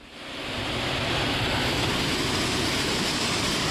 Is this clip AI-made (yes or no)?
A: yes